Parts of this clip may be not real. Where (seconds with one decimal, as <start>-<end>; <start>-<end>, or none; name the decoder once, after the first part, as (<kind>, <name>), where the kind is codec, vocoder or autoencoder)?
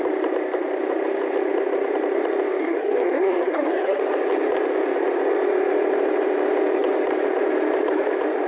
2.6-4.0 (codec, SNAC)